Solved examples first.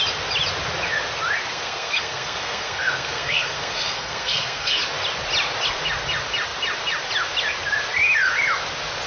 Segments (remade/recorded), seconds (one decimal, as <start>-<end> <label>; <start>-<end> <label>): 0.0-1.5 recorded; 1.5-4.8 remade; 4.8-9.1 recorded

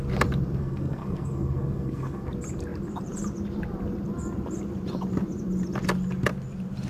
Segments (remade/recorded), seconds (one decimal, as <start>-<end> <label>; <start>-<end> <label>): 0.0-0.6 recorded; 0.6-2.3 remade; 2.3-6.9 recorded

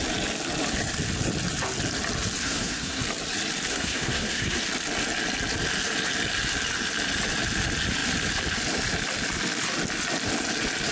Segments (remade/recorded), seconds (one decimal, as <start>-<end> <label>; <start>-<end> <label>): 0.0-2.4 recorded; 2.4-3.0 remade; 3.0-3.7 recorded; 3.7-4.6 remade; 4.6-10.9 recorded

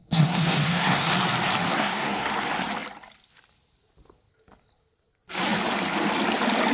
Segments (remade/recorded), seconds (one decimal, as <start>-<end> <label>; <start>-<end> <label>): 0.0-1.1 remade; 1.1-1.7 recorded; 1.7-2.3 remade; 2.3-6.7 recorded

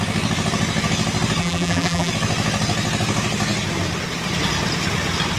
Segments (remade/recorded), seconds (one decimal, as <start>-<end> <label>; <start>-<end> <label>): 0.0-1.4 recorded; 1.4-2.1 remade; 2.1-5.4 recorded

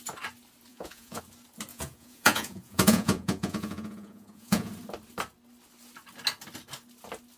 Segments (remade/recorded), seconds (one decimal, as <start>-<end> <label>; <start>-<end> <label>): 0.0-0.7 recorded; 0.7-1.2 remade; 1.2-1.7 recorded; 1.7-4.7 remade; 4.7-7.4 recorded

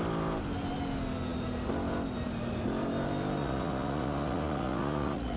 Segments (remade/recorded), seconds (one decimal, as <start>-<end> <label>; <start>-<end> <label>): 0.0-3.4 recorded; 3.4-5.4 remade